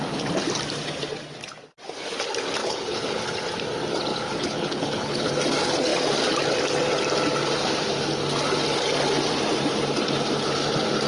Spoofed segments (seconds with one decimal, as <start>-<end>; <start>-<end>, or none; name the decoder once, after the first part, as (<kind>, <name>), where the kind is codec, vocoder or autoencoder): 2.6-3.2 (codec, HILCodec); 4.1-5.3